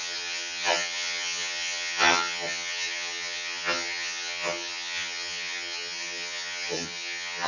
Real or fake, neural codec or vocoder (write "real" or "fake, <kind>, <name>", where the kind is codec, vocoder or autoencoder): fake, vocoder, HiFi-GAN